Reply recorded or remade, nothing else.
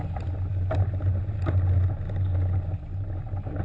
recorded